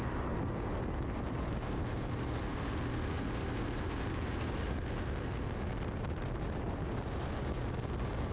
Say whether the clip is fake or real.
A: real